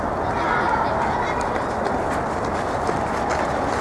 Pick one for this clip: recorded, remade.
recorded